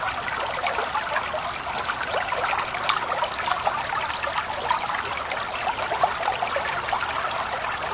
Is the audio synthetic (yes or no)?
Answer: no